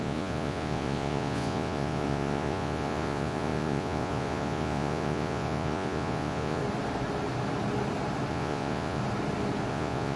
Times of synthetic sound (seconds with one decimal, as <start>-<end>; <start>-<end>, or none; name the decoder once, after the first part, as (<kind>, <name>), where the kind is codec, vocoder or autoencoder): 0.0-6.6 (vocoder, Vocos); 8.3-9.0; 9.7-10.2